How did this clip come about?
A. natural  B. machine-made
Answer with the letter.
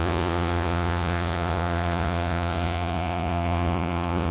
B